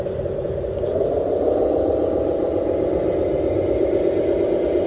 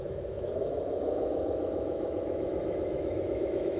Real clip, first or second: first